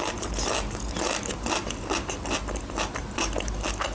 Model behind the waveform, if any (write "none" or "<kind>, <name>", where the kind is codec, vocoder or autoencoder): none